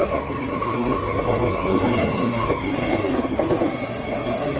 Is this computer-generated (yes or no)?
yes